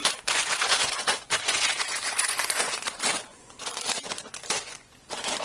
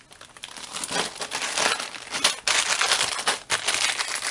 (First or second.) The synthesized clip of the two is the first